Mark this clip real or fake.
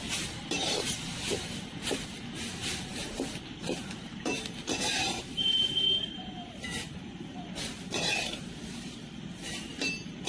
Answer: fake